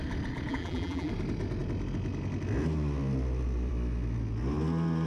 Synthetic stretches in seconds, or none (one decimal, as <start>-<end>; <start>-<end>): 0.5-1.1